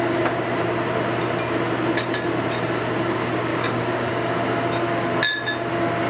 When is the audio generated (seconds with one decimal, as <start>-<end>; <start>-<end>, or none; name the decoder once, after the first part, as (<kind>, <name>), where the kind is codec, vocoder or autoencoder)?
3.5-4.3 (codec, DAC)